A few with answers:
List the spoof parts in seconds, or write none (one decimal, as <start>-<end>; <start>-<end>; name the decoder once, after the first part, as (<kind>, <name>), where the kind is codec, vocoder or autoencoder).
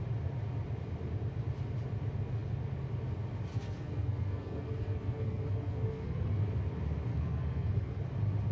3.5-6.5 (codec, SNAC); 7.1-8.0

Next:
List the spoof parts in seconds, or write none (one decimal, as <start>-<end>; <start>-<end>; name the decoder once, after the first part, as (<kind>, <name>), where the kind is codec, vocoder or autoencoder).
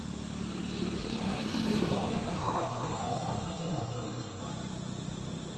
1.0-4.4 (codec, SNAC)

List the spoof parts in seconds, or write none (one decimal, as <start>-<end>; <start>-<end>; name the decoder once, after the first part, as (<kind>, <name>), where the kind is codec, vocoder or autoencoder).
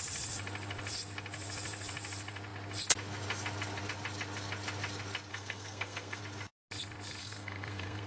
5.3-6.2 (codec, SNAC); 7.2-8.1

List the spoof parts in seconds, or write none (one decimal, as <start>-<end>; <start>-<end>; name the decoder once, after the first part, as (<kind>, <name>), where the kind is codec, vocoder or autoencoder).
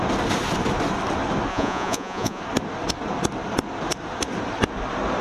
1.5-2.4 (vocoder, Vocos)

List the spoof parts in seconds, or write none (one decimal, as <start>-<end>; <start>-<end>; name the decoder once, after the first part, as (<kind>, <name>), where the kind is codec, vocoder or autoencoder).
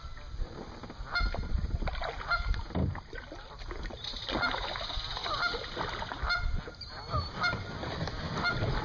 2.8-3.6 (vocoder, BigVGAN v2)